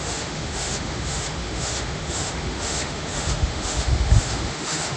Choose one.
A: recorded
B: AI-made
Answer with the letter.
B